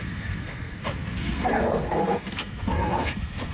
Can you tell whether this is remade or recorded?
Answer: remade